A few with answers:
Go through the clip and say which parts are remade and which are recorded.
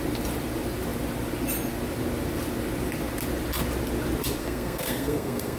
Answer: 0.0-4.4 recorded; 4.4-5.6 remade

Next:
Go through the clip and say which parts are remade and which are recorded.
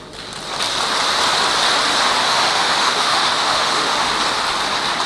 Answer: 0.0-2.2 recorded; 2.2-4.1 remade; 4.1-5.1 recorded